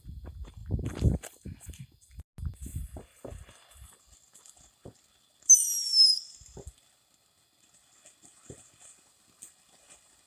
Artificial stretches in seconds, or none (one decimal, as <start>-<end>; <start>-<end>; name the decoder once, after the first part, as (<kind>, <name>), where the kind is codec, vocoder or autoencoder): none